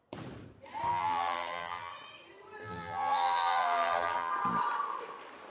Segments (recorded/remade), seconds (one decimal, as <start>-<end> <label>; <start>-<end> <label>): 0.0-0.9 recorded; 0.9-1.9 remade; 1.9-2.6 recorded; 2.6-4.3 remade; 4.3-5.5 recorded